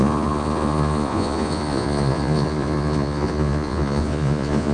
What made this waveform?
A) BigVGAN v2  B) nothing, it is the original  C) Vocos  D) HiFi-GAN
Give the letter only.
C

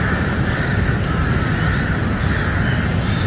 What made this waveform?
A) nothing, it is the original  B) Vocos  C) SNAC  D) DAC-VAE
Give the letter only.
A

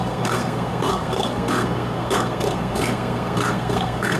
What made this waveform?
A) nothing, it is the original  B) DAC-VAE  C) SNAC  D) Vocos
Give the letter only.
C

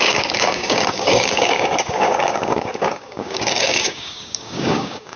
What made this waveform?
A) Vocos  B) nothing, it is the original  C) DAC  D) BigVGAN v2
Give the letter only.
C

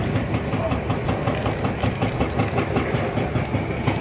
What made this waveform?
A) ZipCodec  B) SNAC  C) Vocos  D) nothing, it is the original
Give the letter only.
D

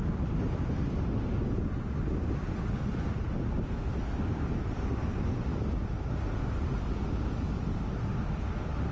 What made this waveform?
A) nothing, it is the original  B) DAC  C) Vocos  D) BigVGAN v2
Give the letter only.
A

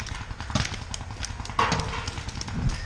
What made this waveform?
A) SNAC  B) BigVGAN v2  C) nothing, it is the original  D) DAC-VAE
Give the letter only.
C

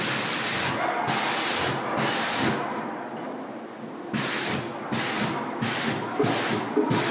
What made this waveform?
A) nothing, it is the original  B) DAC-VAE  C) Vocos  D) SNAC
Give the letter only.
A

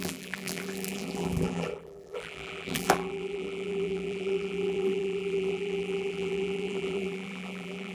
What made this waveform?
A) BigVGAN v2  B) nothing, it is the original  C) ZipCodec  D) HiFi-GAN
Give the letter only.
A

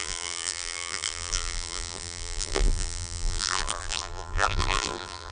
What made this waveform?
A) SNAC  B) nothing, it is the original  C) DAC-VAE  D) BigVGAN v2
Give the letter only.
D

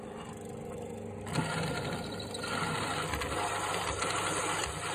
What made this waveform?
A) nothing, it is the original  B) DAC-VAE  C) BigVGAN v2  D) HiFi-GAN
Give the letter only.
A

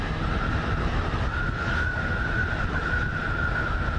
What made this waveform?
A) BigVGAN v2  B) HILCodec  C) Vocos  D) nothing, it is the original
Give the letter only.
D